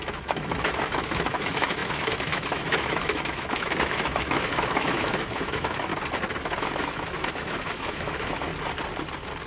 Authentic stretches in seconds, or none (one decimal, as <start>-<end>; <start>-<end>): 5.9-6.6; 8.5-9.5